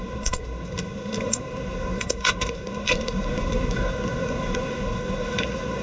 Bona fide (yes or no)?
no